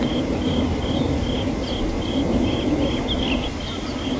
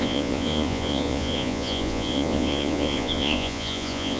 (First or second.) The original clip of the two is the first